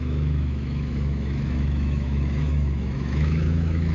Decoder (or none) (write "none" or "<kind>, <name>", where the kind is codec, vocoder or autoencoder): autoencoder, DAC-VAE